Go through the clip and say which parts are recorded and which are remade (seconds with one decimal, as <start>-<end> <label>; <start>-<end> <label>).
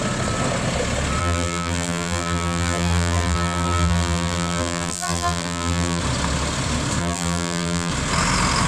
0.0-1.2 recorded; 1.2-6.0 remade; 6.0-7.0 recorded; 7.0-7.9 remade; 7.9-8.7 recorded